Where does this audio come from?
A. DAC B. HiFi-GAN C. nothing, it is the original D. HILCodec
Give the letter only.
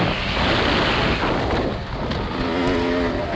C